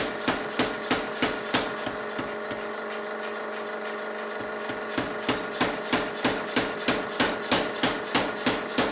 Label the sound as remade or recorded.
recorded